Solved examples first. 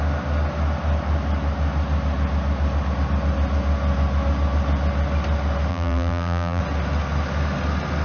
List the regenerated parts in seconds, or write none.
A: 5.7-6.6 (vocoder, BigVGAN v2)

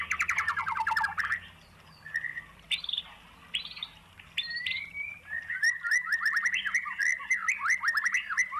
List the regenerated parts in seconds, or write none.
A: none

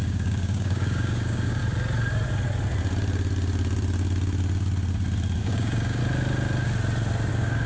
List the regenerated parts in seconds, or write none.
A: 0.0-1.6 (codec, DAC); 5.4-6.0; 7.3-7.7

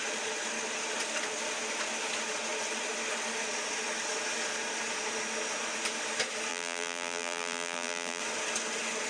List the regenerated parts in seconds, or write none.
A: 6.5-8.2 (vocoder, BigVGAN v2)

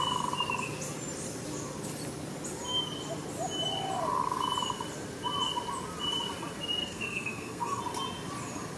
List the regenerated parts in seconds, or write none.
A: 6.8-7.8 (codec, SNAC)

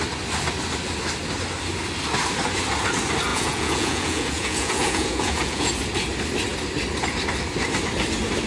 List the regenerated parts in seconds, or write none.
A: 3.3-5.7 (vocoder, Vocos)